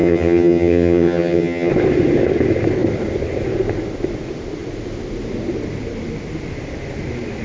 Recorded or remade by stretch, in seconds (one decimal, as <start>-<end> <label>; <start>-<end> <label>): 0.0-1.7 remade; 1.7-7.4 recorded